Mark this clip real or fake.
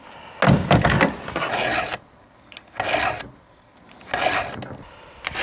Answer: real